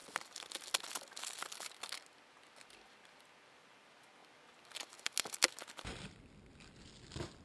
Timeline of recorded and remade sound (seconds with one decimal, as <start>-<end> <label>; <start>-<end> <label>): 0.0-7.4 recorded